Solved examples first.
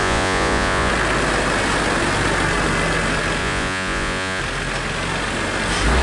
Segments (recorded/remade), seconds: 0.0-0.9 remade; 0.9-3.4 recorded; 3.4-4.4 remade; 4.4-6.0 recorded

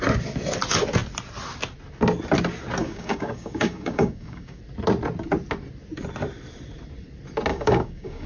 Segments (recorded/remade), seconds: 0.0-2.8 recorded; 2.8-4.6 remade; 4.6-7.5 recorded; 7.5-8.3 remade

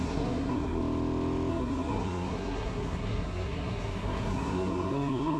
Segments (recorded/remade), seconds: 0.0-0.8 remade; 0.8-1.5 recorded; 1.5-5.4 remade

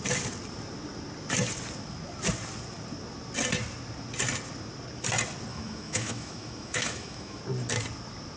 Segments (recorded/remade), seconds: 0.0-5.5 recorded; 5.5-7.4 remade; 7.4-8.4 recorded

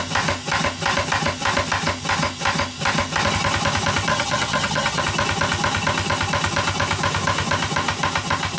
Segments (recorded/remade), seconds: 0.0-4.1 recorded; 4.1-5.0 remade; 5.0-8.6 recorded

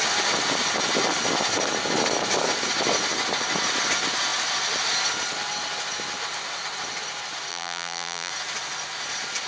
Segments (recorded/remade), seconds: 0.0-7.5 recorded; 7.5-8.3 remade; 8.3-9.5 recorded